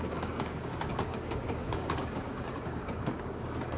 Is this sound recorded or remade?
remade